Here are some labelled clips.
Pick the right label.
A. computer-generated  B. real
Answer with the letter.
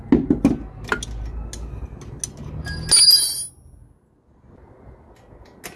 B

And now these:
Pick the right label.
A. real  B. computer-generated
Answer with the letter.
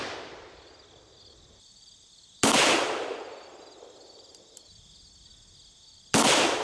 A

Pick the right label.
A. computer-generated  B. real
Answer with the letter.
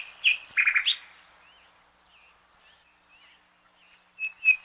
B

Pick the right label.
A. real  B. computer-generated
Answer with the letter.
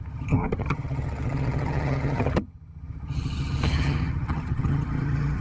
B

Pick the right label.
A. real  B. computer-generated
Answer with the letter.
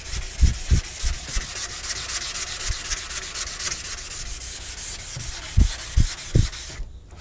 A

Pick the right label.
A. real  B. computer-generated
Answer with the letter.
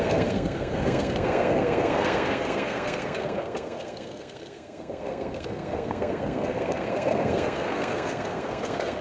B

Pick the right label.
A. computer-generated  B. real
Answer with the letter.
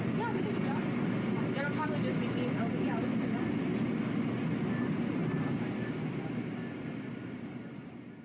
B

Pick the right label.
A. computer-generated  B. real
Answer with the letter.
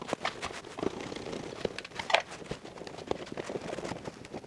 B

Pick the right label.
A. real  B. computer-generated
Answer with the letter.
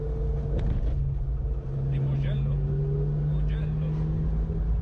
A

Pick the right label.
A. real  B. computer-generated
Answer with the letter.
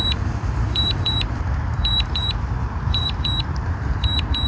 B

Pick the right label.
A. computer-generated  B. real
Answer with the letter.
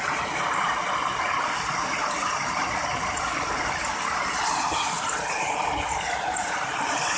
B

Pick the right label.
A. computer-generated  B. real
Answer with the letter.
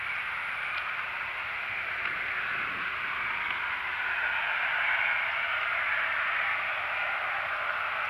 B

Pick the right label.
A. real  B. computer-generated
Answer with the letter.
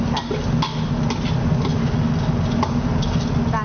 A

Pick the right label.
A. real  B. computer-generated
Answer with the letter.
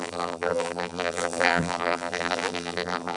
B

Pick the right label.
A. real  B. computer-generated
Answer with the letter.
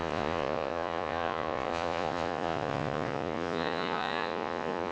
B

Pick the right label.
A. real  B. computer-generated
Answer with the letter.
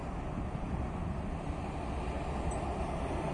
A